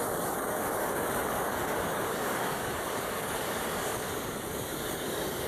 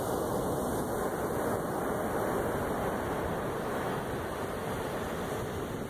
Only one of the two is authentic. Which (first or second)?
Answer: second